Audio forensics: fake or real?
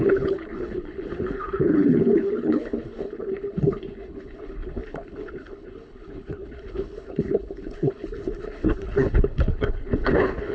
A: fake